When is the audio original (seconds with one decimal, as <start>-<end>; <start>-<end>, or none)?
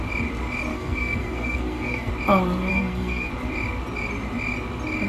0.0-0.7; 2.1-2.7; 3.3-5.1